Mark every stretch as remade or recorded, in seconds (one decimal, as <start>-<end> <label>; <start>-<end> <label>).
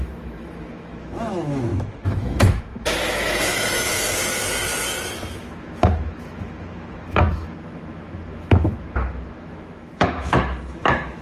0.0-4.2 remade; 4.2-5.3 recorded; 5.3-11.2 remade